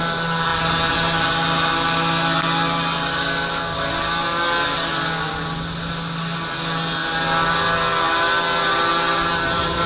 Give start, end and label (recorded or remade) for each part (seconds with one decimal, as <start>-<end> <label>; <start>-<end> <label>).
0.0-9.9 recorded